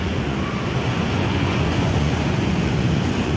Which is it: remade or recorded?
remade